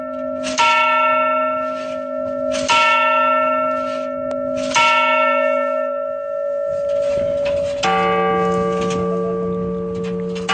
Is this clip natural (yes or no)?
yes